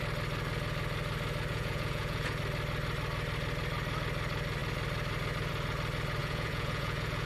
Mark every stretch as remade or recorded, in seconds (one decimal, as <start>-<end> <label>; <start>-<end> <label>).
0.0-1.5 recorded; 1.5-2.4 remade; 2.4-6.2 recorded; 6.2-7.3 remade